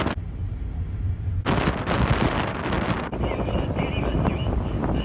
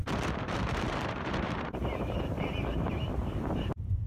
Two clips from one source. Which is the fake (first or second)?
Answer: second